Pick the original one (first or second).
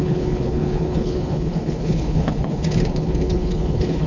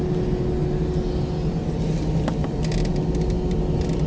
second